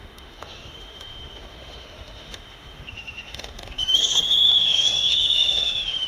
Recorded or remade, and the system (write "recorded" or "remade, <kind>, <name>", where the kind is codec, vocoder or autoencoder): remade, autoencoder, DAC-VAE